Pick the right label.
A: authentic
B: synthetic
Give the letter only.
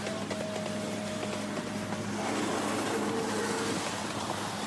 A